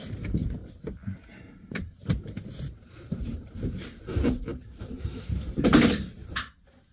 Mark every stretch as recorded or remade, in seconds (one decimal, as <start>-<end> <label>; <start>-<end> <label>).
0.0-0.4 remade; 0.4-1.4 recorded; 1.4-6.9 remade